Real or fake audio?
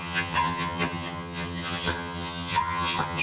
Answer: fake